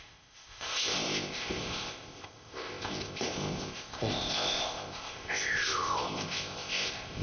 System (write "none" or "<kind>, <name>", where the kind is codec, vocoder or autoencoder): codec, ZipCodec